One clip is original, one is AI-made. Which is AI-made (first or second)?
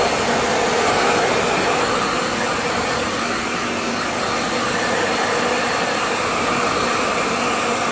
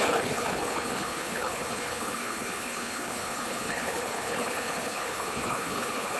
second